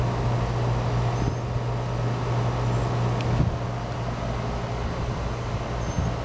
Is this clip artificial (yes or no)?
no